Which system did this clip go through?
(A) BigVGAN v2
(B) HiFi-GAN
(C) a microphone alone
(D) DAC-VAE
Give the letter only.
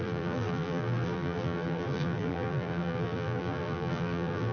A